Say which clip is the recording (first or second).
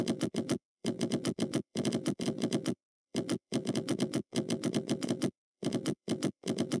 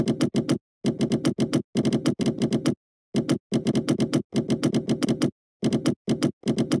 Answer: second